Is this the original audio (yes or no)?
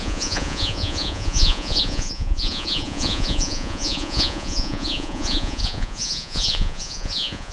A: no